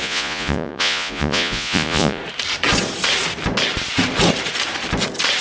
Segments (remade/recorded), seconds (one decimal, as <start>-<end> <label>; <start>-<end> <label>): 0.0-2.2 remade; 2.2-5.4 recorded